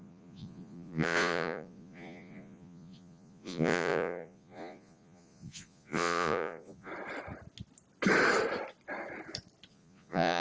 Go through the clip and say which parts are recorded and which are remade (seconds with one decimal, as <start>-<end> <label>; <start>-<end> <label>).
0.0-6.9 remade; 6.9-9.7 recorded; 9.7-10.4 remade

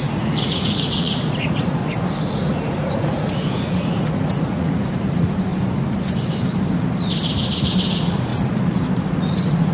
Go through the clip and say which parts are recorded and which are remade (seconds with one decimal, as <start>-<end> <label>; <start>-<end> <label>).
0.0-1.8 remade; 1.8-2.3 recorded; 2.3-5.5 remade; 5.5-7.9 recorded; 7.9-8.3 remade; 8.3-9.0 recorded; 9.0-9.7 remade

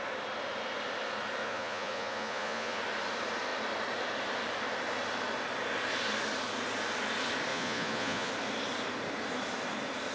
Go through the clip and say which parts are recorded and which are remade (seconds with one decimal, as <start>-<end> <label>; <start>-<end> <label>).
0.0-1.4 recorded; 1.4-2.8 remade; 2.8-7.5 recorded; 7.5-8.3 remade; 8.3-10.1 recorded